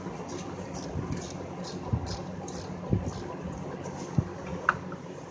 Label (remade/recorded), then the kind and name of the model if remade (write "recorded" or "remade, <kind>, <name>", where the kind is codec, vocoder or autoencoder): recorded